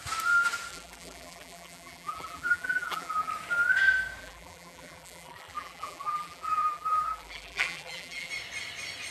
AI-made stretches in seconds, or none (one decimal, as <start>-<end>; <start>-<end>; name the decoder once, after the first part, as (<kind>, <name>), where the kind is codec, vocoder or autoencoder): 0.7-3.3 (vocoder, BigVGAN v2); 4.2-8.3